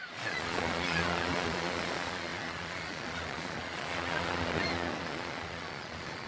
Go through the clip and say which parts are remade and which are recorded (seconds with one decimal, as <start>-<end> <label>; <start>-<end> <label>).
0.0-6.3 remade